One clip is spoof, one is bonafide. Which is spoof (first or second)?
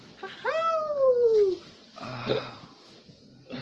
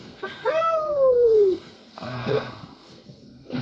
second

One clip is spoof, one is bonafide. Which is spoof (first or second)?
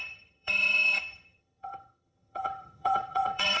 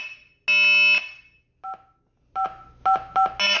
first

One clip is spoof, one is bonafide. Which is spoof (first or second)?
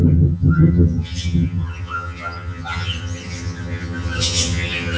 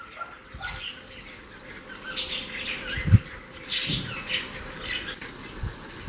first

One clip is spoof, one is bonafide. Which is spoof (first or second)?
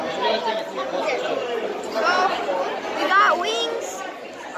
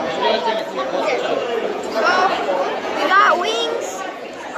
second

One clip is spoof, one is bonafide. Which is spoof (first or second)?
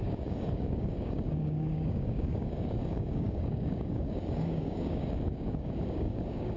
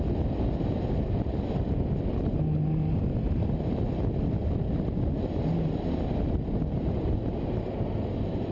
first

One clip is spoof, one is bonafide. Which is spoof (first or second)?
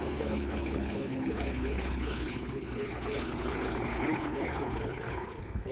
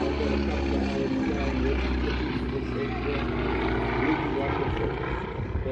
first